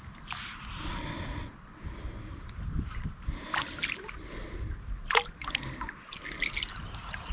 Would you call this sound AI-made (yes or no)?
no